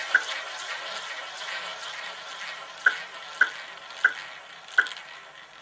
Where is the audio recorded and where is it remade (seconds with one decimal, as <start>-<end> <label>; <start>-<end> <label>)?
0.0-5.6 recorded